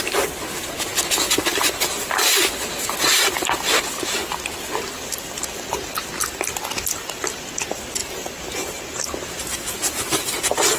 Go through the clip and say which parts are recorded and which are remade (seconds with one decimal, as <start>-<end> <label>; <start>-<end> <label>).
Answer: 0.0-1.5 recorded; 1.5-5.8 remade; 5.8-8.0 recorded; 8.0-8.8 remade; 8.8-10.8 recorded